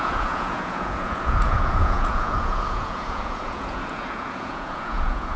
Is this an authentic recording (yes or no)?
no